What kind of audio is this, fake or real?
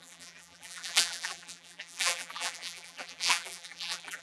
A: fake